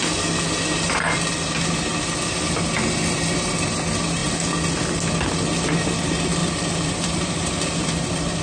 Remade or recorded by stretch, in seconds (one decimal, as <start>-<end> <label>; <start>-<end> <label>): 0.0-6.4 recorded; 6.4-8.4 remade